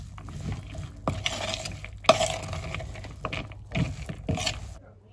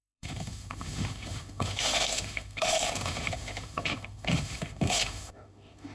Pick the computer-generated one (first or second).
second